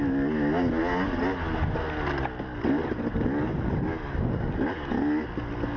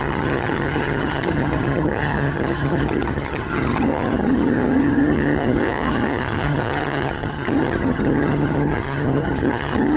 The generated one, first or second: second